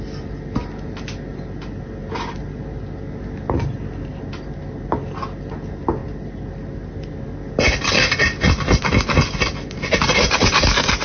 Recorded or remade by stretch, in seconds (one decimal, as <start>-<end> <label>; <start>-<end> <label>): 0.0-11.0 recorded